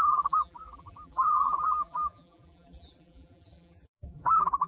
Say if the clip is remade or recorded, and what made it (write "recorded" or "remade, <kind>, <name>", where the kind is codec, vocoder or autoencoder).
remade, vocoder, BigVGAN v2